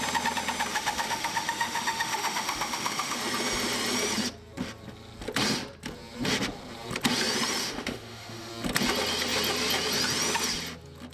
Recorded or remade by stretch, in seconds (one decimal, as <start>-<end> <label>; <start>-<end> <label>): 0.0-0.7 recorded; 0.7-3.2 remade; 3.2-7.6 recorded; 7.6-8.5 remade; 8.5-11.1 recorded